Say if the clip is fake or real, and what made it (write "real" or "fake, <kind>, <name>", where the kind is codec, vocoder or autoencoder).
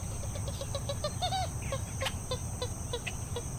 real